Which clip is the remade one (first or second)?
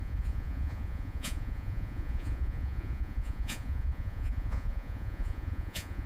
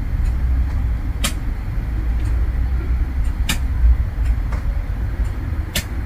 first